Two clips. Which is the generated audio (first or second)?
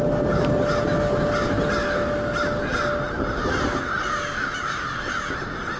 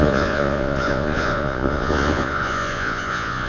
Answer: second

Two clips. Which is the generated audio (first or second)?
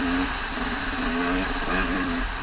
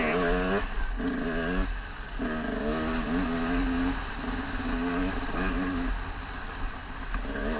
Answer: first